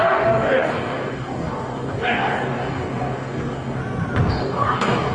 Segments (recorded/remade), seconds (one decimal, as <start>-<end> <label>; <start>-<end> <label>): 0.0-3.8 remade; 3.8-4.3 recorded; 4.3-5.1 remade